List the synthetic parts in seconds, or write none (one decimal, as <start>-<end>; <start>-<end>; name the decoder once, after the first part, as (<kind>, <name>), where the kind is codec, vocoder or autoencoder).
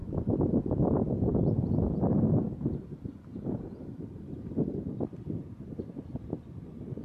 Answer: none